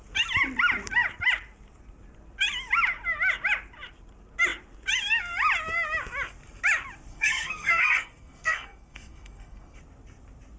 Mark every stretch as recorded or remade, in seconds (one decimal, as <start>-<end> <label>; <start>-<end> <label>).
0.0-7.1 recorded; 7.1-9.8 remade; 9.8-10.6 recorded